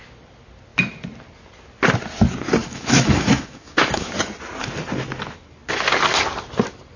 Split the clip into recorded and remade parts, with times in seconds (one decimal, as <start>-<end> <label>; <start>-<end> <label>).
0.0-2.6 recorded; 2.6-4.1 remade; 4.1-7.0 recorded